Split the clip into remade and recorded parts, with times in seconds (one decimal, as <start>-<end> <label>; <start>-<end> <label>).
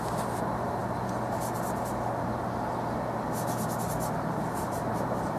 0.0-0.8 remade; 0.8-3.8 recorded; 3.8-5.4 remade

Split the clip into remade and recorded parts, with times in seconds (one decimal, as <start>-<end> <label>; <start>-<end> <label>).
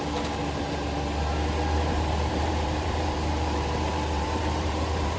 0.0-1.9 recorded; 1.9-5.2 remade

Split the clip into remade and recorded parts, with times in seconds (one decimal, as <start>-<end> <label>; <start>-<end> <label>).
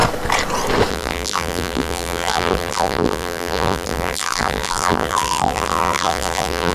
0.0-0.9 recorded; 0.9-6.7 remade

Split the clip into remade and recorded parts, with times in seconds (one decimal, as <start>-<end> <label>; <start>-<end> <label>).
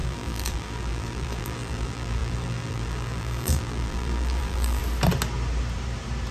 0.0-4.8 remade; 4.8-6.3 recorded